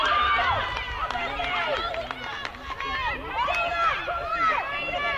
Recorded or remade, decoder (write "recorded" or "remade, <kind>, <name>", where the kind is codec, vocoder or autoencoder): recorded